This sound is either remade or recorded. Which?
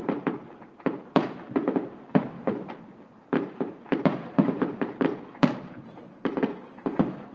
remade